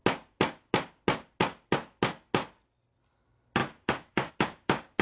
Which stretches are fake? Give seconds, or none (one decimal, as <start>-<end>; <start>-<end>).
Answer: 3.6-4.3